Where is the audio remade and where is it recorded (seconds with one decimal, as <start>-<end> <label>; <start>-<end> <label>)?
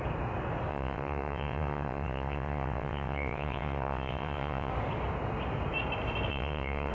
0.0-0.7 recorded; 0.7-4.7 remade; 4.7-6.3 recorded; 6.3-6.9 remade